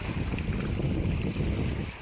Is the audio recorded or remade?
recorded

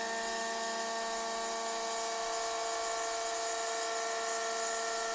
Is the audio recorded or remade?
recorded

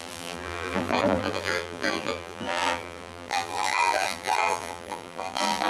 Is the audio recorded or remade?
remade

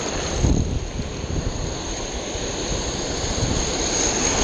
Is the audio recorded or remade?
remade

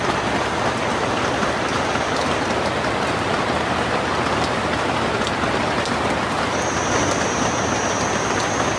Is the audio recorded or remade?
remade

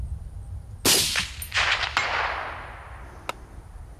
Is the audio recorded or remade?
recorded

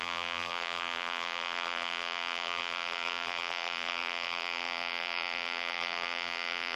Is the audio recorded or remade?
remade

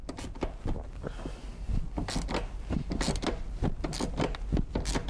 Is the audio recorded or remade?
recorded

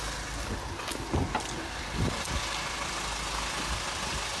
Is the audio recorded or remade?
recorded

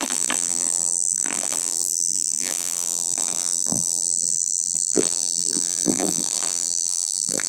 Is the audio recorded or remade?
remade